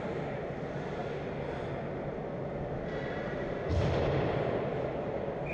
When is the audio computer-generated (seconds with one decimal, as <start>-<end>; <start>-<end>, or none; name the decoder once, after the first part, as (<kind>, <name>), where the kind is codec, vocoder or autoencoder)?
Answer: 0.0-1.0 (vocoder, BigVGAN v2); 3.8-5.5